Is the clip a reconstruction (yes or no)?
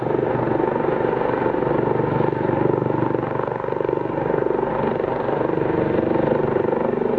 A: no